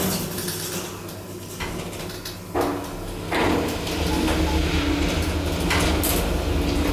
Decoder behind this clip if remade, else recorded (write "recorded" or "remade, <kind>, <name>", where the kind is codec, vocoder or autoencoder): recorded